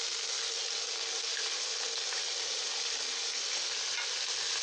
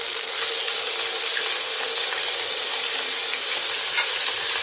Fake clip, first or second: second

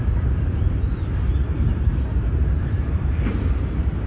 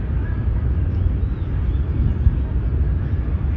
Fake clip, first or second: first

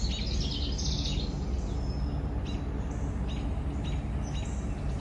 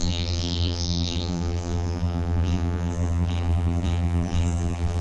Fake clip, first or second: second